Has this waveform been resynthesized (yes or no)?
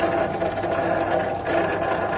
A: no